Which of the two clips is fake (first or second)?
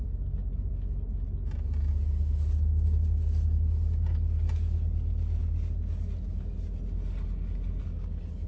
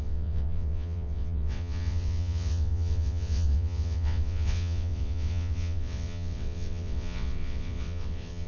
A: second